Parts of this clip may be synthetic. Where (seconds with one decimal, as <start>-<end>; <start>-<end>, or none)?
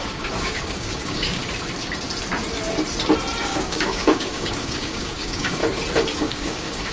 0.0-1.4; 3.4-5.6; 6.2-6.9